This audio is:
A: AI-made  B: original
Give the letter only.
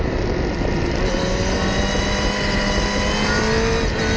B